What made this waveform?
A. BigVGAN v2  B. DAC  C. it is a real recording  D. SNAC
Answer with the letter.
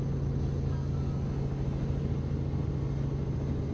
C